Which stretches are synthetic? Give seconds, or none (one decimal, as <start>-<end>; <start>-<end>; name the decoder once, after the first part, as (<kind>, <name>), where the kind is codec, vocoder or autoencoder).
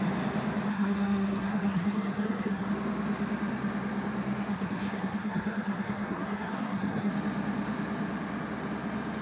0.7-2.7 (codec, SNAC); 4.5-7.1